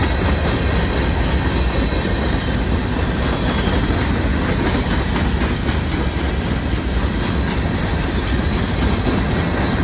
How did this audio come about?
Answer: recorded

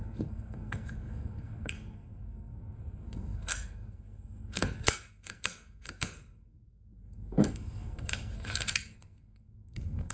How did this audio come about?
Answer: remade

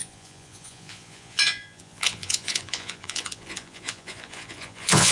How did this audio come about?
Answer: remade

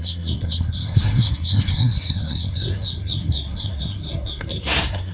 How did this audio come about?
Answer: remade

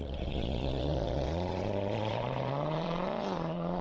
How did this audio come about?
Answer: remade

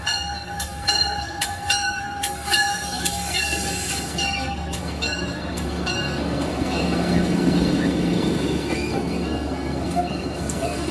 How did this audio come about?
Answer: remade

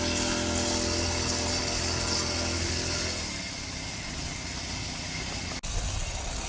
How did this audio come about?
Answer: recorded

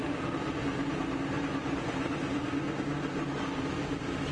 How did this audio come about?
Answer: recorded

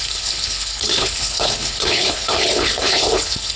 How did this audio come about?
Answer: remade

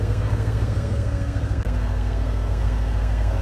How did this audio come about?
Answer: remade